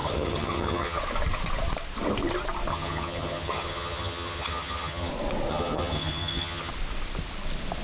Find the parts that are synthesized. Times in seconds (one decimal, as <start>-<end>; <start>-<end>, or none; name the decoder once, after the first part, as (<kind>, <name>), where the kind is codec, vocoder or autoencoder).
0.0-1.0 (vocoder, HiFi-GAN); 2.7-5.1; 5.5-6.7